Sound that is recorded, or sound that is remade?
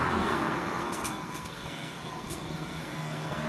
remade